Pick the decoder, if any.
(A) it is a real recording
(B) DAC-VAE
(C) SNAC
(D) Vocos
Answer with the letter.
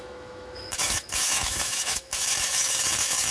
B